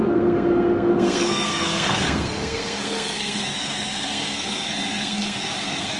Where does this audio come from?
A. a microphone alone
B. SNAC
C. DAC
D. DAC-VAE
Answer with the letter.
B